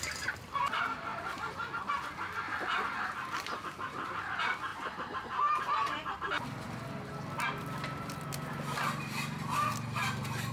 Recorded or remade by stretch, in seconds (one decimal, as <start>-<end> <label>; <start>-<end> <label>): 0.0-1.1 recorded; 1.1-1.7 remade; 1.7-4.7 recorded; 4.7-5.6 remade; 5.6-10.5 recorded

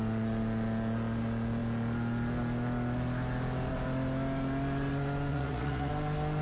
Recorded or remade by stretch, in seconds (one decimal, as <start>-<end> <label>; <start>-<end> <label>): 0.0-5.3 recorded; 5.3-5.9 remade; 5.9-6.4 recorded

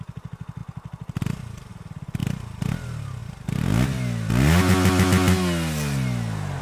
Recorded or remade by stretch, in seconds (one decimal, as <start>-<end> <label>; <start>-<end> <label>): 0.0-6.6 recorded